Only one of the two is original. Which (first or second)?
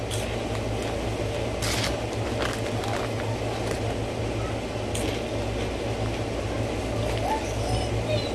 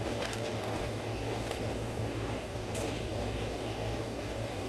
first